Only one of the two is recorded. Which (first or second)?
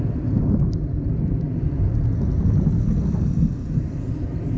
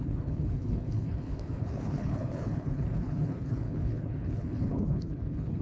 first